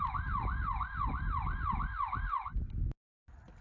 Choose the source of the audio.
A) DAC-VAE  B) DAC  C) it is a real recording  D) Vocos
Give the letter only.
C